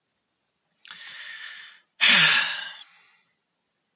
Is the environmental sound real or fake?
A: real